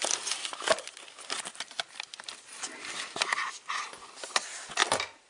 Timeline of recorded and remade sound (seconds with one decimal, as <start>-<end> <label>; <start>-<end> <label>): 0.0-5.3 recorded